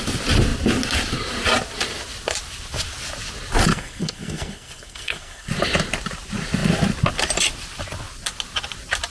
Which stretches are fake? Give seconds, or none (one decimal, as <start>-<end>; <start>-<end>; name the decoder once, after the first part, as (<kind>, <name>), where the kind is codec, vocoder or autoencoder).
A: 3.7-5.5 (codec, SNAC)